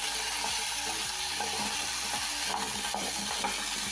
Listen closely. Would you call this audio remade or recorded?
recorded